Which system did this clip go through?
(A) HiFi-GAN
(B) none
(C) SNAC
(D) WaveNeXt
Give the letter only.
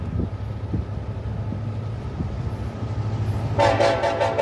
B